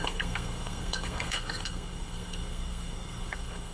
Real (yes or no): no